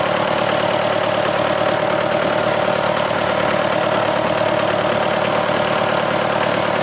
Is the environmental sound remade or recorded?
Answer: recorded